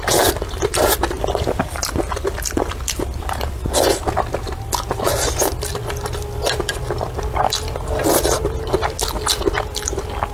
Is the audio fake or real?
real